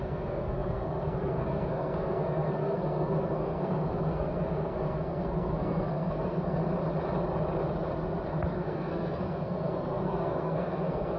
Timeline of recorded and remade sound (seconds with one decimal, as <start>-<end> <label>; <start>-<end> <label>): 0.0-6.6 remade; 6.6-8.3 recorded; 8.3-11.2 remade